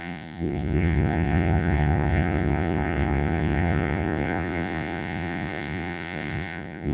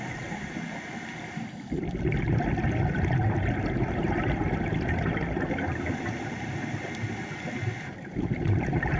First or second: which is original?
second